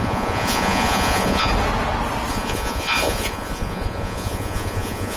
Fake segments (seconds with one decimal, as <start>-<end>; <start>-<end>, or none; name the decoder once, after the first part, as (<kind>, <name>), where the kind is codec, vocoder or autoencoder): 0.0-1.5 (vocoder, Vocos); 2.3-5.2